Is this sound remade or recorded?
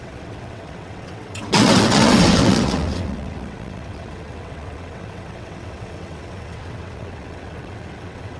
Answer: remade